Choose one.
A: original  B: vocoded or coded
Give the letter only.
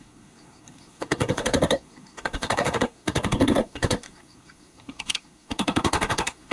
B